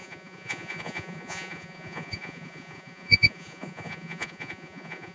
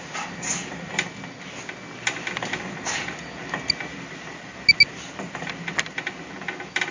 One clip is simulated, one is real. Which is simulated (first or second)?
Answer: first